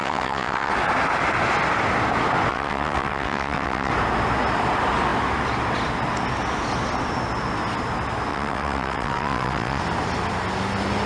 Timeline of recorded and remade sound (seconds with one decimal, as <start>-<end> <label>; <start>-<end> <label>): 0.0-0.7 remade; 0.7-2.5 recorded; 2.5-3.9 remade; 3.9-8.3 recorded; 8.3-9.8 remade; 9.8-11.1 recorded